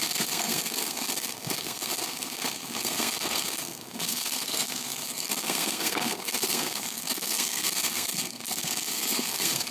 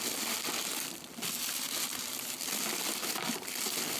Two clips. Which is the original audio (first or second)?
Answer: second